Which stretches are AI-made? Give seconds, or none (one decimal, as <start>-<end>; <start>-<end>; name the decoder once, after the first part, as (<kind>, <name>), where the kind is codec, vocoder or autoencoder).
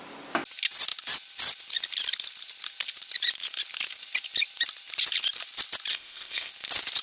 5.9-6.5 (codec, ZipCodec)